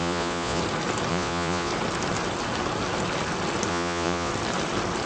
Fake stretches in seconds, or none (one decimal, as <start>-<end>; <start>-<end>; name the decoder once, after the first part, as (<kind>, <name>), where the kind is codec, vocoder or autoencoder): 0.0-0.6 (vocoder, Vocos); 1.1-1.7; 3.7-4.3